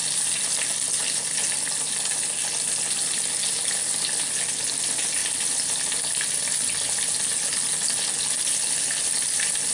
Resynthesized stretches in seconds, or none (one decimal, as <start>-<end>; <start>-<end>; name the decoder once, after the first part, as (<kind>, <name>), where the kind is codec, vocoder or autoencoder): none

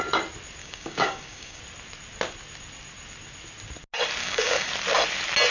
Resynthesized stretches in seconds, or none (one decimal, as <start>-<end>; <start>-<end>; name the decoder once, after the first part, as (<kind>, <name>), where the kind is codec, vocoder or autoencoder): 0.6-1.6 (codec, DAC); 4.2-4.7

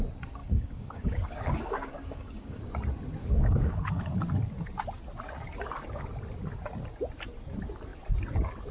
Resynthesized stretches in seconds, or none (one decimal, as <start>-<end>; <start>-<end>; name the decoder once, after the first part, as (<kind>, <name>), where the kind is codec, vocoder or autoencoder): 0.4-2.6 (codec, DAC); 3.2-4.0

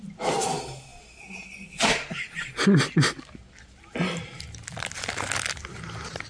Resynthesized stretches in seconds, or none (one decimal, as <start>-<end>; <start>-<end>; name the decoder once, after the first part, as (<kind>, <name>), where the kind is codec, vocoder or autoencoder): none

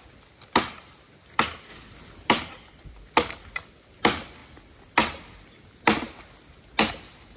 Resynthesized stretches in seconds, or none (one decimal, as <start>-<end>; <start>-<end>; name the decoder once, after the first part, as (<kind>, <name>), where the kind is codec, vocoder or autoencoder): none

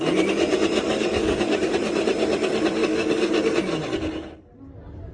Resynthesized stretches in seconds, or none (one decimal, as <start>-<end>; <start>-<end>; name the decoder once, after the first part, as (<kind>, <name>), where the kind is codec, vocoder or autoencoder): 0.8-1.7 (codec, DAC); 2.8-3.4

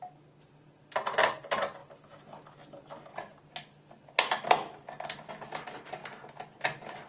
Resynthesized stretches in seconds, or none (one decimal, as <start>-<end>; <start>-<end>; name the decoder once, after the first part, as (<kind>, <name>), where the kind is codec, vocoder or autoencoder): none